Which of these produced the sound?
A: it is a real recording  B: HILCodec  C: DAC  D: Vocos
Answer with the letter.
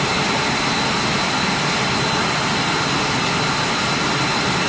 A